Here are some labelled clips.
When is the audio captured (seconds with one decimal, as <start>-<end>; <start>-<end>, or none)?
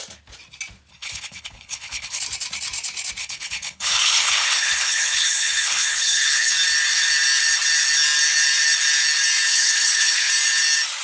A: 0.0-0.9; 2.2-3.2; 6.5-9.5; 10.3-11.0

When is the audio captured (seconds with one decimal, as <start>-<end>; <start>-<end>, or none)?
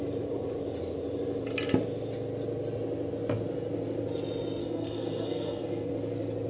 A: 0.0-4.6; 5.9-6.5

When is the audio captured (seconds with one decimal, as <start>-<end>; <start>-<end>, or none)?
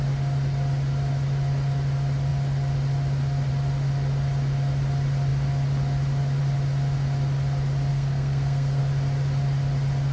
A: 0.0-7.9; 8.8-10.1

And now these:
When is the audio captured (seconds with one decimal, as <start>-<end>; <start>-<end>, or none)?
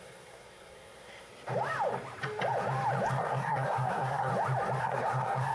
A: 1.3-3.1; 4.3-4.8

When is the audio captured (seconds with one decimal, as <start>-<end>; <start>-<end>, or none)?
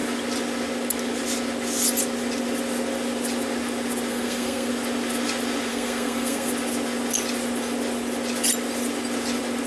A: 0.0-4.1; 4.7-5.7; 6.5-9.7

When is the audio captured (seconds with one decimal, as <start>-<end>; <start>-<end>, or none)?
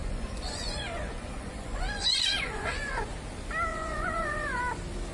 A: 3.1-3.7; 4.6-5.1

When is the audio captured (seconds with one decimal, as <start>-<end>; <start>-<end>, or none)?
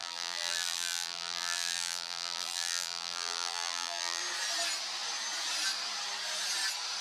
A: 4.2-7.0